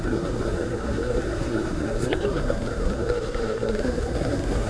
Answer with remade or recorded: remade